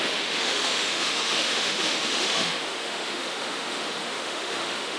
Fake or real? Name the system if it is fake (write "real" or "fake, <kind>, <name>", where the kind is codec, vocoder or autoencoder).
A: fake, autoencoder, DAC-VAE